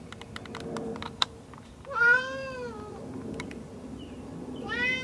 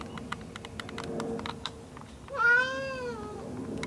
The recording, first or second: second